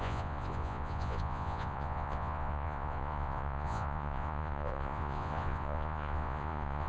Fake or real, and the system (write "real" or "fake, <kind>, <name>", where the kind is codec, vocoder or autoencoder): fake, vocoder, Vocos